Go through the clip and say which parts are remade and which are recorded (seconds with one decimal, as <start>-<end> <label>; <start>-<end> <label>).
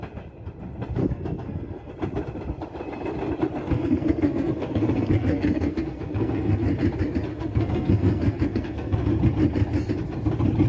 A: 0.0-1.0 recorded; 1.0-1.9 remade; 1.9-3.6 recorded; 3.6-6.7 remade; 6.7-7.3 recorded; 7.3-9.1 remade; 9.1-10.7 recorded